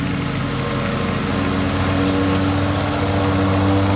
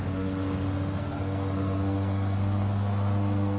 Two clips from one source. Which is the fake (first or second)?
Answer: second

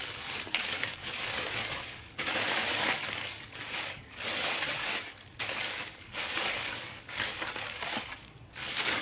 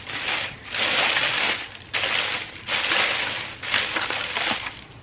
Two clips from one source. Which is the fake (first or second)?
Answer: first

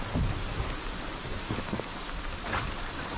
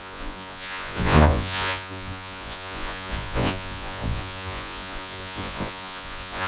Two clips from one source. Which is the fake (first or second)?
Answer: second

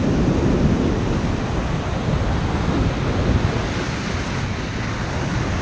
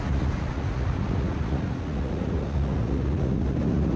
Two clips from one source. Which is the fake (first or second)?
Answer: second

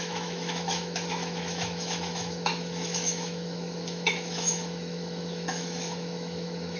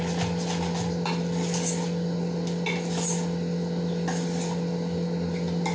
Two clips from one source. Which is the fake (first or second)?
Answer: first